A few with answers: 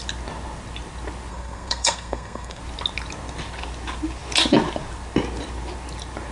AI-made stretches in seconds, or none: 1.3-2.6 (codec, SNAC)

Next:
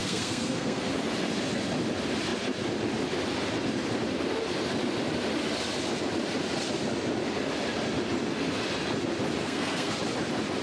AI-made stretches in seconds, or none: 0.0-0.9 (codec, SNAC); 9.4-9.9